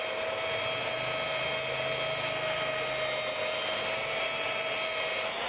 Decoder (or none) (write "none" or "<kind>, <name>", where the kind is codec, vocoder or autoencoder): none